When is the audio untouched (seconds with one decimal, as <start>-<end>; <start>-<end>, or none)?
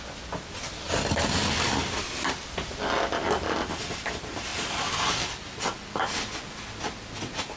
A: 0.0-7.6